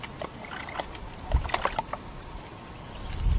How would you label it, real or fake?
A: real